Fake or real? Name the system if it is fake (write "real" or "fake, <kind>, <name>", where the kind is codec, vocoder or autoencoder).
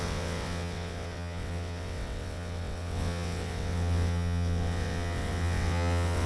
fake, vocoder, WaveNeXt